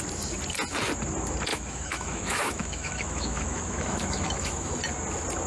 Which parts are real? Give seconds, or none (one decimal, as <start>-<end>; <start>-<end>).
0.0-1.5; 4.7-5.5